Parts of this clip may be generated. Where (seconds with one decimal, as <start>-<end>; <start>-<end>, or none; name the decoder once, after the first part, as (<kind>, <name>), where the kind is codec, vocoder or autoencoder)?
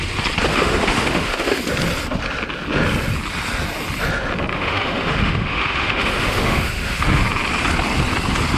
0.5-1.6 (autoencoder, DAC-VAE); 4.5-7.2